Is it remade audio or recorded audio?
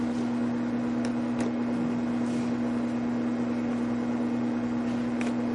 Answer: recorded